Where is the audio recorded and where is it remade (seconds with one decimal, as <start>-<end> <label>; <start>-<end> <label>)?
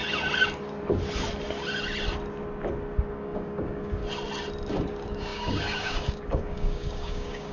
0.0-3.1 recorded; 3.1-4.0 remade; 4.0-4.7 recorded; 4.7-7.5 remade